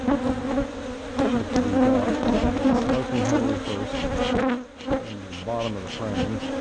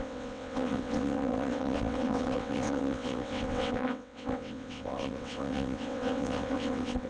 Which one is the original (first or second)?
first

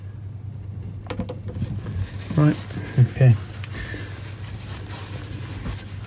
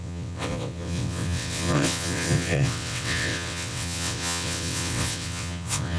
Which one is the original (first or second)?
first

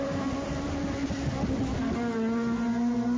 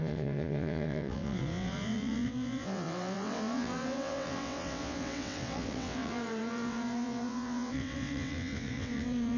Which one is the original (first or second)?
first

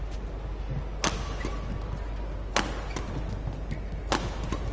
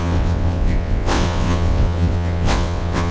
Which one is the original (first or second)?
first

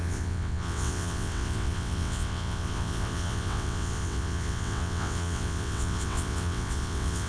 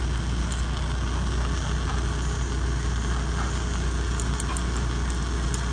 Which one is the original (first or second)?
second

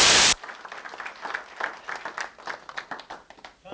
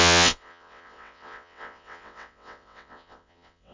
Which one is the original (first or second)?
first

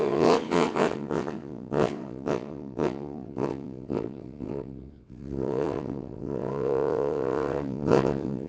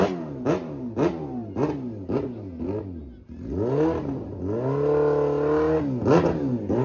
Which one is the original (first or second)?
second